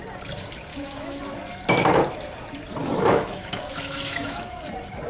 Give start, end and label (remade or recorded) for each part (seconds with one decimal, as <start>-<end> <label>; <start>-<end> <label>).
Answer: 0.0-0.7 recorded; 0.7-1.2 remade; 1.2-2.8 recorded; 2.8-4.6 remade; 4.6-5.1 recorded